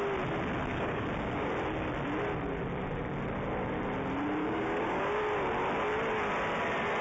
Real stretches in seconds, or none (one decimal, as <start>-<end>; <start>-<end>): 0.0-0.7; 1.5-4.4; 5.2-7.0